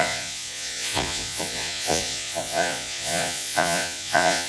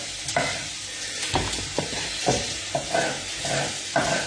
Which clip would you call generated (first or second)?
first